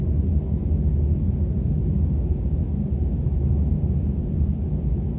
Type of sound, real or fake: real